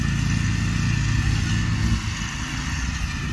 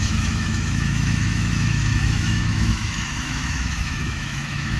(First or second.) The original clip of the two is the first